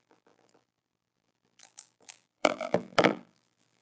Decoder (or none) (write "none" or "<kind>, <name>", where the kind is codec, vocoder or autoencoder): vocoder, BigVGAN v2